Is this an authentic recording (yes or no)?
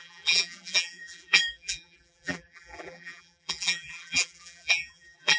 no